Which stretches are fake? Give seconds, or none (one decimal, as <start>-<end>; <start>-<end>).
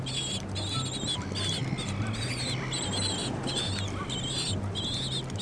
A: none